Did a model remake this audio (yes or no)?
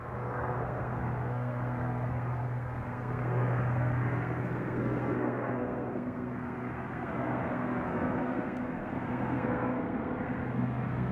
yes